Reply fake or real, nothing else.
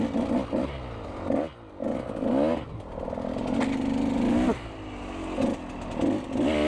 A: real